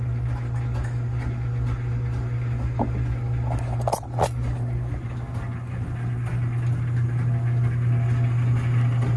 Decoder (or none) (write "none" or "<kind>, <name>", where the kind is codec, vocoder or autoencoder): none